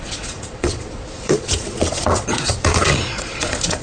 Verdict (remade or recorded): remade